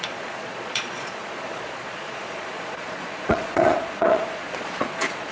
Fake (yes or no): yes